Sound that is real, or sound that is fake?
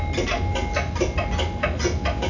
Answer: real